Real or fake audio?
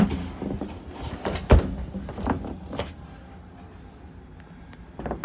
real